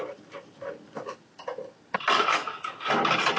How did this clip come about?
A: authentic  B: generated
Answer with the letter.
A